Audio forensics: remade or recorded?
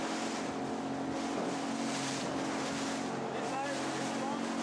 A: recorded